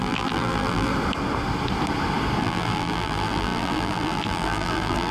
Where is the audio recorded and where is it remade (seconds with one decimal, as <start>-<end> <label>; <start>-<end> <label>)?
0.0-0.9 remade; 0.9-2.4 recorded; 2.4-5.1 remade